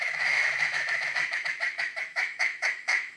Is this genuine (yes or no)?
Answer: no